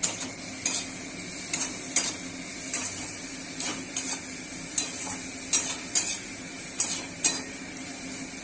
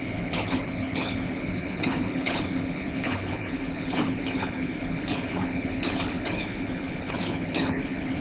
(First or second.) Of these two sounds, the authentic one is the first